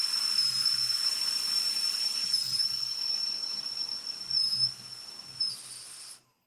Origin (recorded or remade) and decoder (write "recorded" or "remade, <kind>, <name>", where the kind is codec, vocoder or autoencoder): recorded